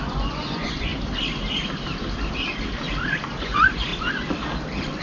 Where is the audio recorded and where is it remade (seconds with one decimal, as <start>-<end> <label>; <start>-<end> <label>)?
0.0-0.9 remade; 0.9-3.4 recorded; 3.4-3.9 remade; 3.9-5.0 recorded